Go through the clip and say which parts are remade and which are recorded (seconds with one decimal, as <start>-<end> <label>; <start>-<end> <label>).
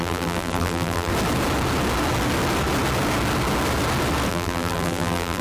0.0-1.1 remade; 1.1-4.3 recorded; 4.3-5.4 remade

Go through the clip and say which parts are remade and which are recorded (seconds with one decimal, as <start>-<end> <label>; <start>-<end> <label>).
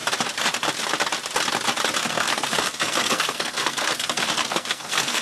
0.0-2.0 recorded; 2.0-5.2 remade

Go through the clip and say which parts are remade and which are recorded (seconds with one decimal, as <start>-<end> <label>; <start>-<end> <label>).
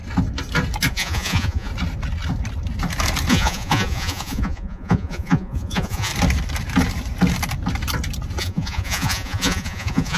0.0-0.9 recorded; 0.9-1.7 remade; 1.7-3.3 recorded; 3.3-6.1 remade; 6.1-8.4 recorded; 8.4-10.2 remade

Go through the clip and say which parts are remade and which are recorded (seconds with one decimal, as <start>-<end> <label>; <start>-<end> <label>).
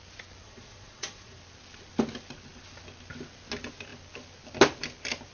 0.0-0.4 recorded; 0.4-1.4 remade; 1.4-5.3 recorded